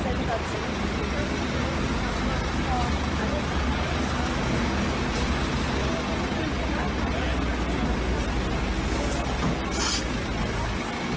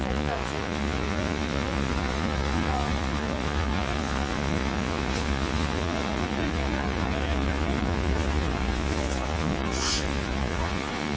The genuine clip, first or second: first